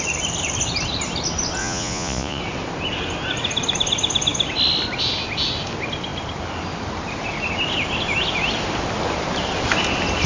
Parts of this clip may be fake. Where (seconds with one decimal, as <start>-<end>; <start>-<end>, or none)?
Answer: 1.6-2.4